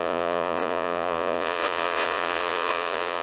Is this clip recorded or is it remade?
remade